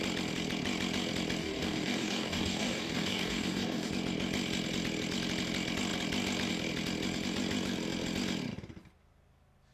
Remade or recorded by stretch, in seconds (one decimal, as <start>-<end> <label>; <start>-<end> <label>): 0.0-1.4 recorded; 1.4-3.9 remade; 3.9-9.7 recorded